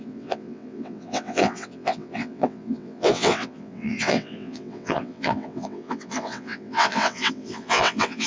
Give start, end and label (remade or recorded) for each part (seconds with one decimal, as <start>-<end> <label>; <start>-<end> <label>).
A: 0.0-8.3 remade